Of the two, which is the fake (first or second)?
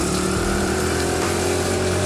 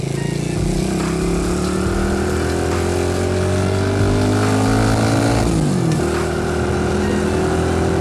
first